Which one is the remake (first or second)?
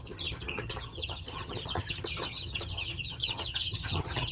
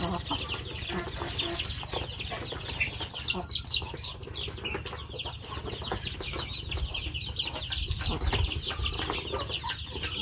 first